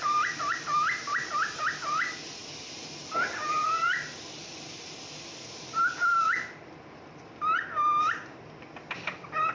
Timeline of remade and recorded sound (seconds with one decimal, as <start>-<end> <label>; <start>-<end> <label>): 0.0-2.4 recorded; 2.4-6.8 remade; 6.8-9.5 recorded